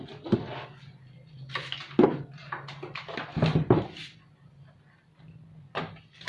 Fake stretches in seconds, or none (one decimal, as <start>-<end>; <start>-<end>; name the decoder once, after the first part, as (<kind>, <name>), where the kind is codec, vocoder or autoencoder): none